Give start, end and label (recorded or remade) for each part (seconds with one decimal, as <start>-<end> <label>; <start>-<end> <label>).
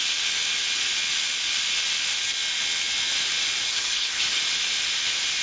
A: 0.0-3.7 recorded; 3.7-4.4 remade; 4.4-5.4 recorded